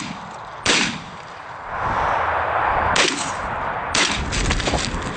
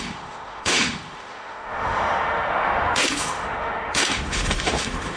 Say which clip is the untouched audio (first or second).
first